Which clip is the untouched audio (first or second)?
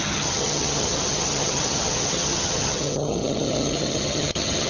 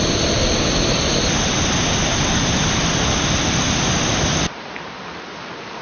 second